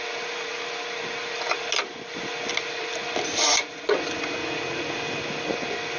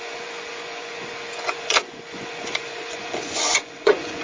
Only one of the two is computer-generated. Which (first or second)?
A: second